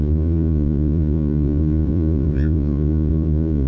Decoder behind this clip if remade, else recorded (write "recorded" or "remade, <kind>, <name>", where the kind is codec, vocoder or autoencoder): remade, vocoder, Vocos